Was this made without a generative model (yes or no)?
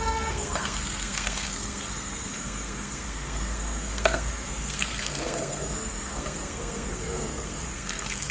no